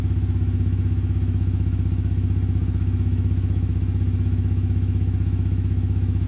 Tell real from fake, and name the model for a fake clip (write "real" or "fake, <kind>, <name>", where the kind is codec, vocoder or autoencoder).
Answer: fake, autoencoder, DAC-VAE